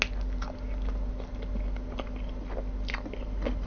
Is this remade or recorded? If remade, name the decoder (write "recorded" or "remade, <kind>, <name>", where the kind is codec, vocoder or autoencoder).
recorded